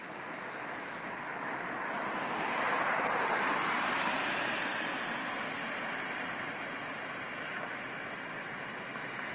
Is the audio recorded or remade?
recorded